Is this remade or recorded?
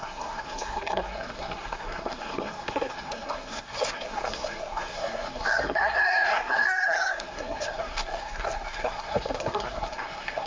remade